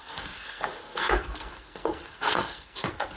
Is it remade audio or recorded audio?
remade